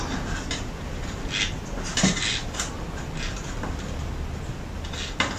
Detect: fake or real real